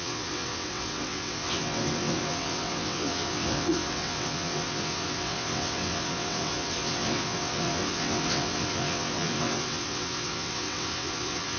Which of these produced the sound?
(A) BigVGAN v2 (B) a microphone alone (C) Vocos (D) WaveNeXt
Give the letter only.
D